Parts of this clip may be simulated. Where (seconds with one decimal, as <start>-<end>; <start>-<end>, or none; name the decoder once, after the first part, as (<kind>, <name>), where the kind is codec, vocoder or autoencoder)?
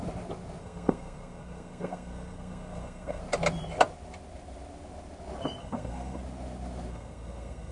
0.6-3.2 (codec, SNAC); 5.6-6.2; 6.9-7.7